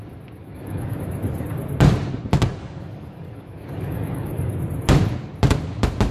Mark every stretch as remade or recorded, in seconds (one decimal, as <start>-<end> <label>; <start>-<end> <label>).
0.0-0.4 recorded; 0.4-1.0 remade; 1.0-2.6 recorded; 2.6-4.6 remade; 4.6-6.1 recorded